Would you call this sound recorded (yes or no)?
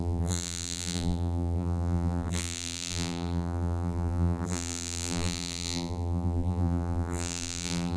no